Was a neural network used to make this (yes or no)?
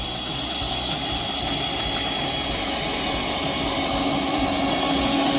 no